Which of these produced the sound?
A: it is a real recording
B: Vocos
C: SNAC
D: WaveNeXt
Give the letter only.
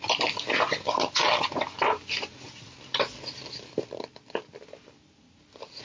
A